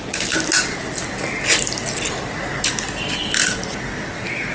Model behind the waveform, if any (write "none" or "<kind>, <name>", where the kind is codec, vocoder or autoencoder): none